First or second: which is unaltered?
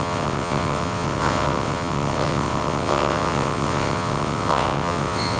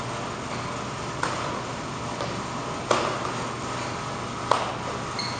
second